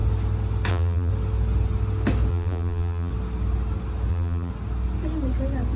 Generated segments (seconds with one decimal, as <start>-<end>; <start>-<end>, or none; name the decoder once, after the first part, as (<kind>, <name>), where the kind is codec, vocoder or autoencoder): 0.7-1.1 (vocoder, BigVGAN v2); 2.3-3.1; 4.1-4.5